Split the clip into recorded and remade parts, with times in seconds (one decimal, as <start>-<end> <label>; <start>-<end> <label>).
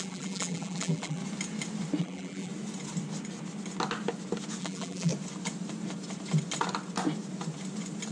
0.0-1.2 remade; 1.2-2.0 recorded; 2.0-2.5 remade; 2.5-4.6 recorded; 4.6-5.1 remade; 5.1-8.1 recorded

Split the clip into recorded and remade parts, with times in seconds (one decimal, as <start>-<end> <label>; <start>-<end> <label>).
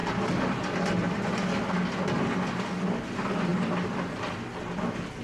0.0-3.5 recorded; 3.5-4.5 remade; 4.5-5.2 recorded